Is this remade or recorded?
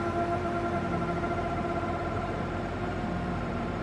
remade